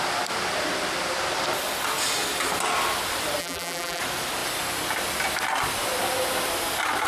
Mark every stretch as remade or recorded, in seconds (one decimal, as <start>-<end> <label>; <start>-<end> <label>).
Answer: 0.0-3.4 recorded; 3.4-4.0 remade; 4.0-7.1 recorded